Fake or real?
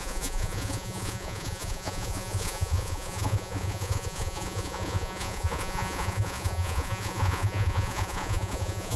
fake